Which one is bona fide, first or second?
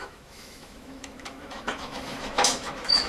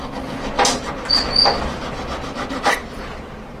second